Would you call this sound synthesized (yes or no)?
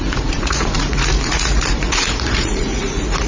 yes